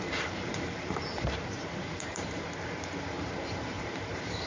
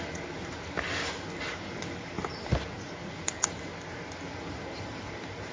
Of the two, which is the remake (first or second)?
first